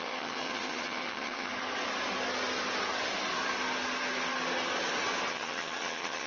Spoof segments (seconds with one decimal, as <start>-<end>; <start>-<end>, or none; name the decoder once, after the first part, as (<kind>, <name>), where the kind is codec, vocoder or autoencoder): 0.0-1.5 (vocoder, HiFi-GAN); 5.3-6.3